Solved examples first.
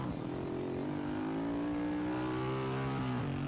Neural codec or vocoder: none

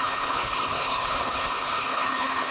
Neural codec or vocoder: codec, HILCodec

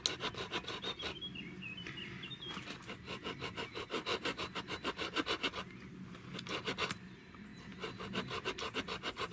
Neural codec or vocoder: none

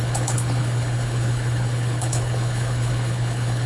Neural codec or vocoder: codec, HILCodec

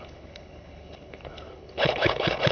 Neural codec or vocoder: codec, HILCodec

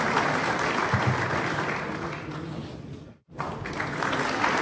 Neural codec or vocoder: none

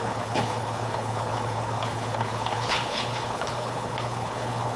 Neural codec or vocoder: codec, HILCodec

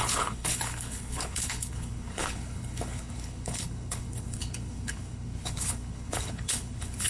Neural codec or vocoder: codec, HILCodec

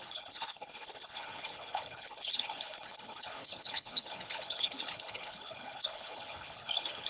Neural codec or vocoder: codec, HILCodec